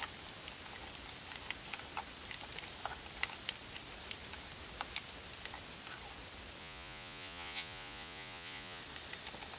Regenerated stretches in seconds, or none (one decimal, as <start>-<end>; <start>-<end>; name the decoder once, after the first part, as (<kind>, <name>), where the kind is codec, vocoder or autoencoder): 6.6-8.8 (vocoder, Vocos)